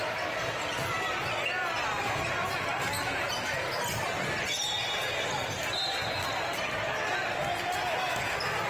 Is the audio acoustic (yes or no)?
yes